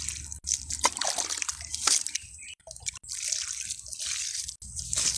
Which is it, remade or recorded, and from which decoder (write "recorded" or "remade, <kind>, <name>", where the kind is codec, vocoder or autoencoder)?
recorded